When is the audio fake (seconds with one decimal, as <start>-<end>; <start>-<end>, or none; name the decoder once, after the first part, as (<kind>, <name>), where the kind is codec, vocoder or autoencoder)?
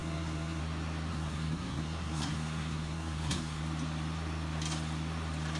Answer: 0.0-0.6 (codec, SNAC); 1.1-3.6